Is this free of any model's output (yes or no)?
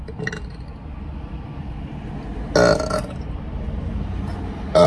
yes